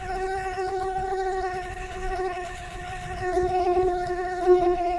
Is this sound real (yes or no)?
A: no